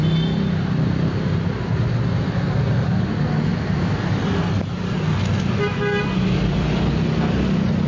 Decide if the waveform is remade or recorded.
recorded